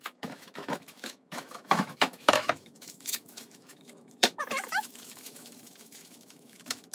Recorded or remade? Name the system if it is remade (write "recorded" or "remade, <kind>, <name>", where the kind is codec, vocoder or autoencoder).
remade, autoencoder, DAC-VAE